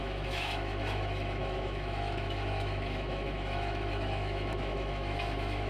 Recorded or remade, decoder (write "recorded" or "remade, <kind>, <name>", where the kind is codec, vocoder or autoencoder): remade, autoencoder, DAC-VAE